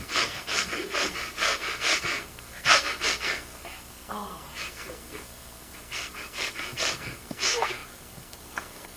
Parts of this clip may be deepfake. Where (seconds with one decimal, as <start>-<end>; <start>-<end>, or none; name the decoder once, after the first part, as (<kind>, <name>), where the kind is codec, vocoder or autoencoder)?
0.0-9.0 (codec, SNAC)